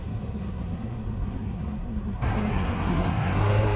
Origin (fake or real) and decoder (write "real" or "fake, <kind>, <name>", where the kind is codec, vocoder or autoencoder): fake, codec, SNAC